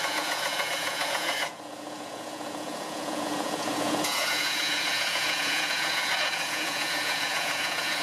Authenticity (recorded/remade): remade